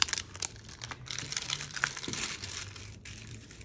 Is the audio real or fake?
fake